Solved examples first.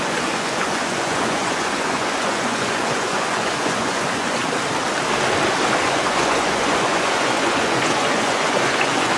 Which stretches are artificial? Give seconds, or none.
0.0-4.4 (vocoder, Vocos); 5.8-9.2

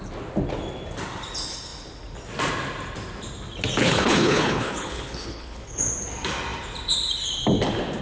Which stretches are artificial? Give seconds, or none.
3.8-5.8 (codec, HILCodec)

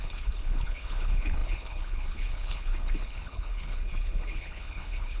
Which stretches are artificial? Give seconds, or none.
0.0-5.2 (codec, HILCodec)

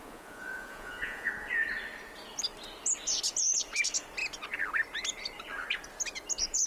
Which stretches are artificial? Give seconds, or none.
0.0-1.3 (vocoder, Vocos)

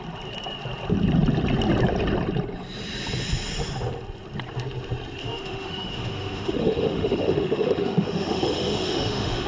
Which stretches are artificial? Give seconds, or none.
5.2-9.5 (autoencoder, DAC-VAE)

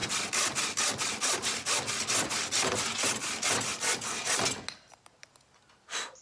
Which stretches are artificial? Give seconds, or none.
none